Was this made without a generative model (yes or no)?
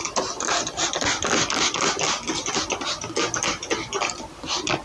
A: yes